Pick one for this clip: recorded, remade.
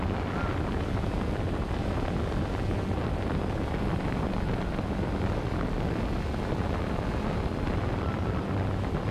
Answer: recorded